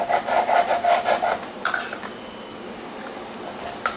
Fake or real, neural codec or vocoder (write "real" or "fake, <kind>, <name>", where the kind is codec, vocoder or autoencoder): fake, vocoder, BigVGAN v2